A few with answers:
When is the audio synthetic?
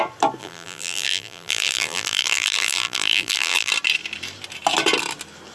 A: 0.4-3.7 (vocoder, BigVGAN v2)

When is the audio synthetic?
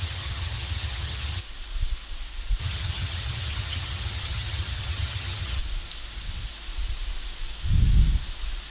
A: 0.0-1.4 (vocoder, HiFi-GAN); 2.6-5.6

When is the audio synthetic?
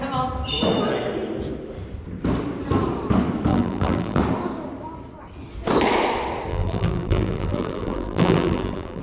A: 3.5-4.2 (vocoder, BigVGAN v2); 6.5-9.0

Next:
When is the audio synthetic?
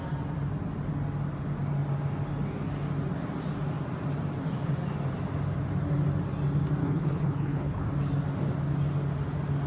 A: 6.8-7.9 (codec, HILCodec)